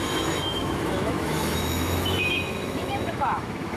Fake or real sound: fake